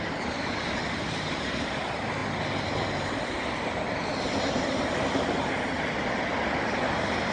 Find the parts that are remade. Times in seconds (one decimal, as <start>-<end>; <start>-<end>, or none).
none